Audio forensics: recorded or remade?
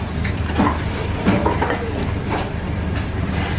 recorded